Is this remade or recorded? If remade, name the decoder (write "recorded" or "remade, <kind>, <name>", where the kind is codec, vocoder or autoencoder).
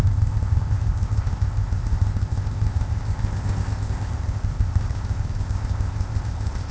remade, codec, ZipCodec